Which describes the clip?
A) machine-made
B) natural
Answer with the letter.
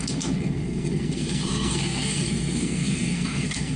A